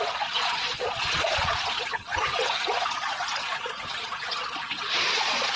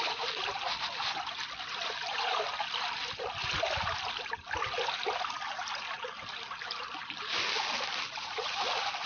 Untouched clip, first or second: second